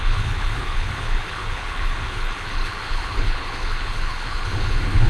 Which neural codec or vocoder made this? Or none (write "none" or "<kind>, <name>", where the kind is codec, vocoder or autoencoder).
codec, HILCodec